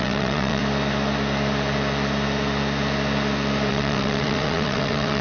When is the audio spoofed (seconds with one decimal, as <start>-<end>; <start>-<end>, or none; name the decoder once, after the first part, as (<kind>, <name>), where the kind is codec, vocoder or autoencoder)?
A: 0.0-0.6 (vocoder, WaveNeXt); 3.7-5.2